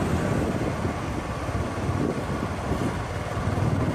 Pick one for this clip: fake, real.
real